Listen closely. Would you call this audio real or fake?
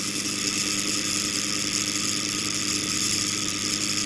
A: real